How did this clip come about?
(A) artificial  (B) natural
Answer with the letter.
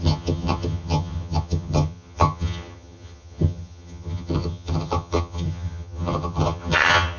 A